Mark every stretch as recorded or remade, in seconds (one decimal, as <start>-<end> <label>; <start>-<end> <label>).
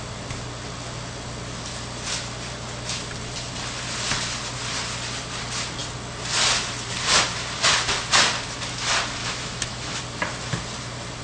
0.0-9.2 recorded; 9.2-10.0 remade; 10.0-11.2 recorded